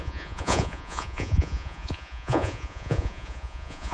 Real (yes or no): no